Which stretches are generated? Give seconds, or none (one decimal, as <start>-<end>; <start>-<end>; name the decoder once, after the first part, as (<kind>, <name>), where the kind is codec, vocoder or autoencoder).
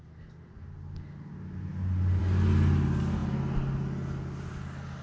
none